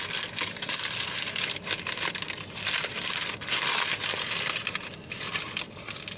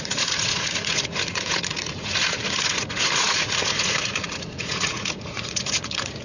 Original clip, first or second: first